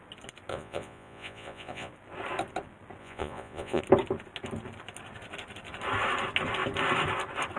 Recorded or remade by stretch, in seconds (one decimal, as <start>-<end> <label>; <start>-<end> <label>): 0.0-0.5 recorded; 0.5-1.9 remade; 1.9-3.0 recorded; 3.0-3.8 remade; 3.8-7.6 recorded